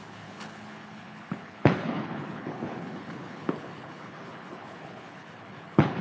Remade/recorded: remade